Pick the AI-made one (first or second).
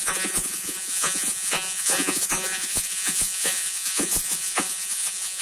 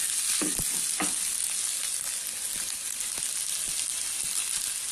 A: first